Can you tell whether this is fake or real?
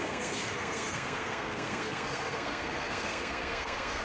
fake